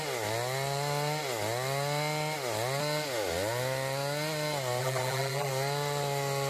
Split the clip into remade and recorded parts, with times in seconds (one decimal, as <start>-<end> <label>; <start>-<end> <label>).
0.0-4.8 recorded; 4.8-5.5 remade; 5.5-6.5 recorded